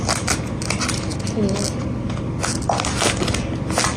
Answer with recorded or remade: recorded